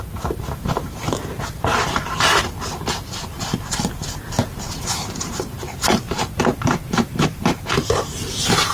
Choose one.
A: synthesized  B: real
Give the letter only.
A